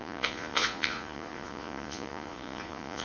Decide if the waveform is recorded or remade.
remade